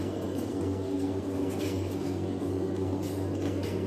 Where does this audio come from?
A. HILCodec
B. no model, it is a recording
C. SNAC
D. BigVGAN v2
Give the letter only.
C